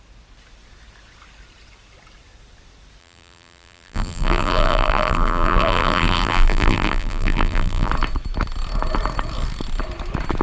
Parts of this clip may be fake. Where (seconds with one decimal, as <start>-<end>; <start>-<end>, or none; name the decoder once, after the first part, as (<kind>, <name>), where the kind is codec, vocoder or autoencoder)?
3.0-7.9 (vocoder, BigVGAN v2)

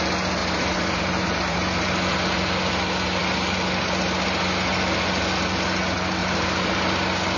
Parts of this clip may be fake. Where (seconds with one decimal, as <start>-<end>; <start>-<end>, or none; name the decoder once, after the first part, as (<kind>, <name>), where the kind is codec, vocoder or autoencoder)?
0.4-2.1 (vocoder, BigVGAN v2); 6.2-6.7